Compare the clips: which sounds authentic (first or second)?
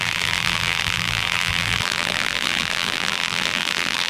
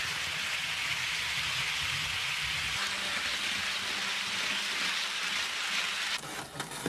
second